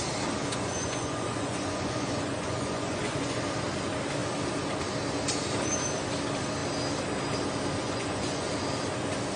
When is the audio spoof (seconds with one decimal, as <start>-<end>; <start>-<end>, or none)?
0.4-3.4; 7.8-8.5